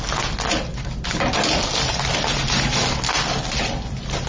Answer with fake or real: real